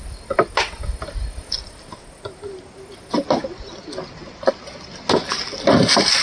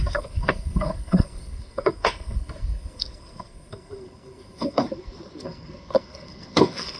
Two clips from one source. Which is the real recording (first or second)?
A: first